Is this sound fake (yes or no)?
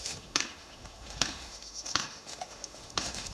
yes